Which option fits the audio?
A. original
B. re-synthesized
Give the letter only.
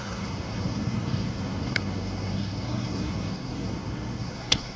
B